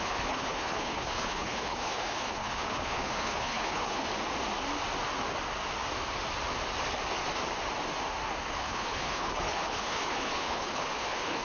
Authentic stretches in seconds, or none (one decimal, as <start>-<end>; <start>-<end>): 4.1-8.4